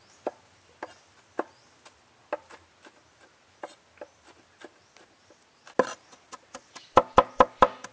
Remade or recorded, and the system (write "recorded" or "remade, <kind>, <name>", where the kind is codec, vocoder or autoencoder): recorded